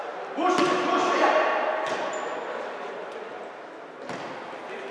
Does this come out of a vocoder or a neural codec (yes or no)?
no